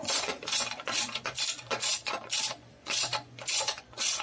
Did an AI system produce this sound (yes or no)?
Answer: yes